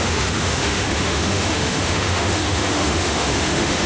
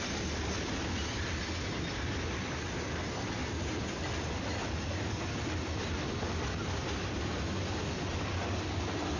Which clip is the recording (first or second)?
second